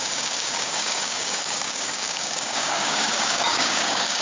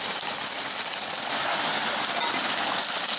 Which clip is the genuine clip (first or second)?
second